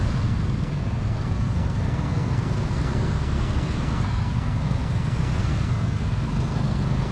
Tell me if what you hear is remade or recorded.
remade